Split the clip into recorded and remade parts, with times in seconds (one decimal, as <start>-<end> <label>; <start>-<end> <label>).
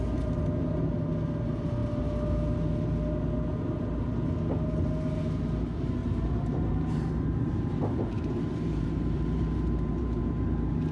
0.0-6.0 recorded; 6.0-10.2 remade; 10.2-10.9 recorded